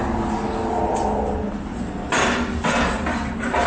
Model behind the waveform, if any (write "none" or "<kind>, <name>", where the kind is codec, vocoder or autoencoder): none